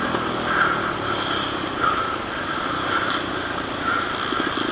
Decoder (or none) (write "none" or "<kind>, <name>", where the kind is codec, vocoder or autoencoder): none